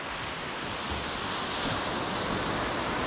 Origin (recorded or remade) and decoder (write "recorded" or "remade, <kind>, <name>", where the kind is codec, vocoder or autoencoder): recorded